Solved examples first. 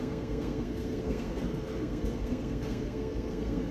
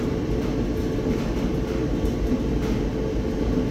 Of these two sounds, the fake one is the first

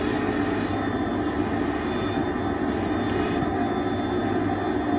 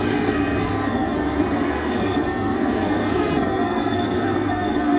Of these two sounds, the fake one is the second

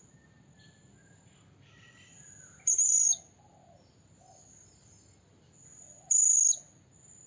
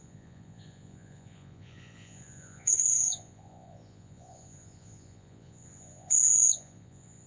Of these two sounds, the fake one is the second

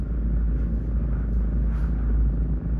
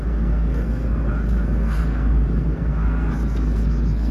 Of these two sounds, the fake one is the second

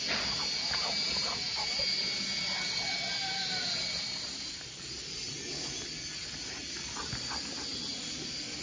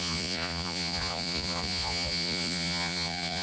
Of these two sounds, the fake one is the second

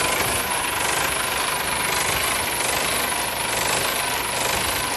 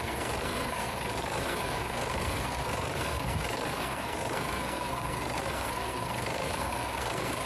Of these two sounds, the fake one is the second